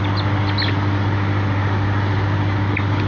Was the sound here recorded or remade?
recorded